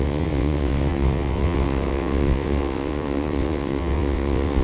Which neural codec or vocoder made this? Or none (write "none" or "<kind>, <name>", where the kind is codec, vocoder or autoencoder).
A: vocoder, WaveNeXt